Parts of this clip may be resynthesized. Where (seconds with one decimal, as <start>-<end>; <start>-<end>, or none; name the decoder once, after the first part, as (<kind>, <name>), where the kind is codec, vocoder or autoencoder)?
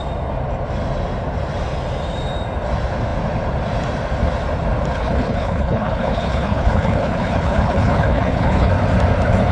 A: 4.9-8.7 (codec, HILCodec)